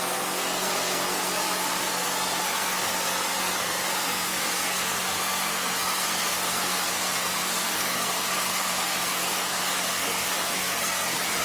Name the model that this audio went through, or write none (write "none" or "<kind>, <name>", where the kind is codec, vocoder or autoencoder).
codec, SNAC